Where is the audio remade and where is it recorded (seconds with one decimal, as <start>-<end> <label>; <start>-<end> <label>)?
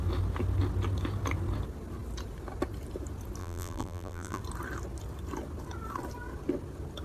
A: 0.0-3.4 recorded; 3.4-4.4 remade; 4.4-7.0 recorded